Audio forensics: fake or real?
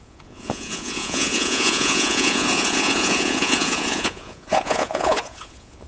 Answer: fake